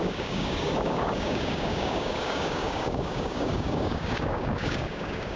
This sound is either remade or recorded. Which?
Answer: remade